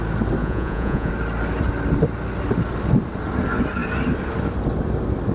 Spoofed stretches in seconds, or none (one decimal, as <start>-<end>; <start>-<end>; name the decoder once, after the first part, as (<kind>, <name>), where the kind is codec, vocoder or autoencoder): 0.4-1.1 (vocoder, Vocos)